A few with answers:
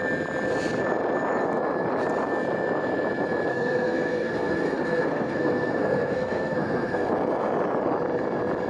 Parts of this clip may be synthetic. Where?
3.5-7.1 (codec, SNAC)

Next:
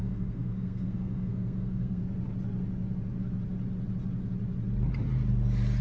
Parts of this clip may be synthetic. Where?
0.0-2.0 (codec, SNAC)

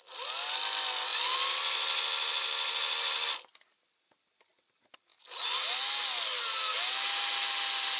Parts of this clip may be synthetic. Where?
none